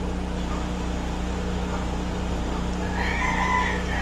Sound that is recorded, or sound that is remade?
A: recorded